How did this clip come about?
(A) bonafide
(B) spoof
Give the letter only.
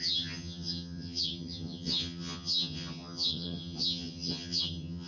B